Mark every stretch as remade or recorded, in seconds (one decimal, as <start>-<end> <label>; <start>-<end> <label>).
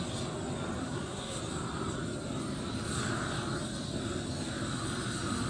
0.0-0.8 recorded; 0.8-1.4 remade; 1.4-5.5 recorded